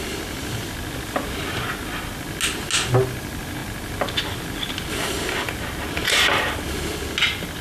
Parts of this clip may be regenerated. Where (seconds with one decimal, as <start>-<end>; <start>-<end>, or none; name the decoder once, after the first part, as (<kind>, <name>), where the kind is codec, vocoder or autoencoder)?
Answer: none